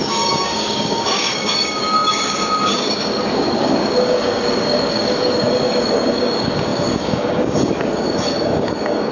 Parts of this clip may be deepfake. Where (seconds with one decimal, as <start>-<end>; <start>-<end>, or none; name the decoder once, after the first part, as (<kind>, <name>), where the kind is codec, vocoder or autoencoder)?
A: 0.0-9.1 (codec, DAC)